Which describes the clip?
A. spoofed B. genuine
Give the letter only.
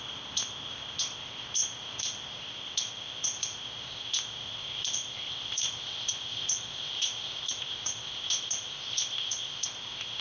A